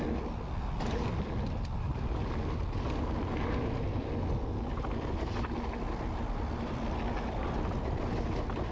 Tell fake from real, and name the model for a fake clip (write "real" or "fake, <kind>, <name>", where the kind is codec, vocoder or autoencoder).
real